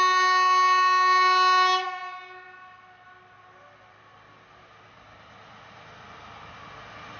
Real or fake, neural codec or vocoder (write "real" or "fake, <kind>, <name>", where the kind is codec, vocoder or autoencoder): real